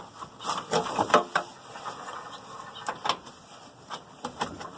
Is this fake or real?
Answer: real